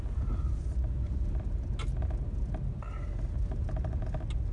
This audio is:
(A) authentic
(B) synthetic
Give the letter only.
A